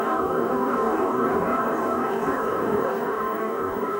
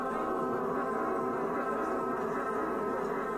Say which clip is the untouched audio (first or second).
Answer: second